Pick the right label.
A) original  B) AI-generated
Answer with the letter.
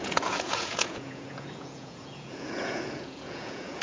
B